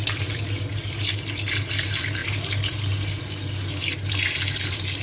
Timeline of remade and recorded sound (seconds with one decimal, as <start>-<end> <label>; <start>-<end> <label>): 0.0-5.0 recorded